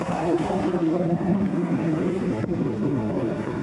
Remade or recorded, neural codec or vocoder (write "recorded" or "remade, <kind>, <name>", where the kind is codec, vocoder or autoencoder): remade, codec, SNAC